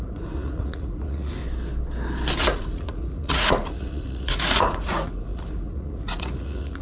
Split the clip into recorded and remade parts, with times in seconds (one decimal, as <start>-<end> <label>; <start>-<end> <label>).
0.0-1.4 remade; 1.4-2.4 recorded; 2.4-6.8 remade